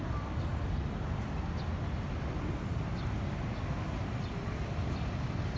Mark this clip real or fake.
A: real